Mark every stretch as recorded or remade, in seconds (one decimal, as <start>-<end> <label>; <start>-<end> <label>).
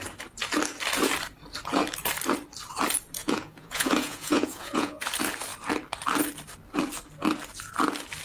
0.0-3.2 recorded; 3.2-5.1 remade; 5.1-8.2 recorded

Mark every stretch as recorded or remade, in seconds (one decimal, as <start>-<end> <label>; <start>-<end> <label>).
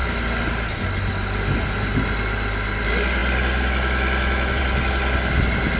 0.0-5.8 recorded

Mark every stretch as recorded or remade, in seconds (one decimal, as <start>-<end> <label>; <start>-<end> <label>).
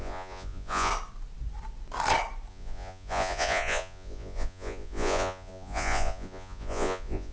0.0-0.9 remade; 0.9-2.5 recorded; 2.5-7.3 remade